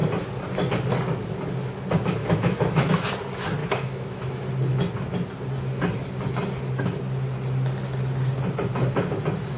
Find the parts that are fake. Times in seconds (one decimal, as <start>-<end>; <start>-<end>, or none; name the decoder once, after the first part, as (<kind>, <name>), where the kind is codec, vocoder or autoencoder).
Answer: 2.2-2.9 (autoencoder, DAC-VAE); 3.6-4.4